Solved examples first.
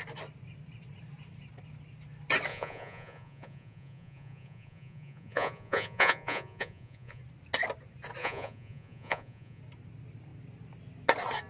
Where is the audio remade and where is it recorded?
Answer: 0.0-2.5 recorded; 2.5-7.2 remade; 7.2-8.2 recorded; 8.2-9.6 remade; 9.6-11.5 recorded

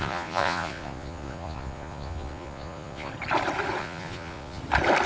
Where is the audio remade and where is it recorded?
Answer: 0.0-3.1 remade; 3.1-3.8 recorded; 3.8-4.6 remade; 4.6-5.1 recorded

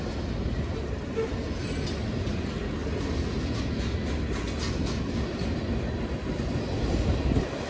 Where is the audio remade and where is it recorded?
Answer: 0.0-7.7 recorded

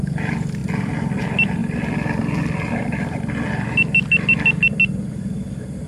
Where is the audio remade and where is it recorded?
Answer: 0.0-5.9 recorded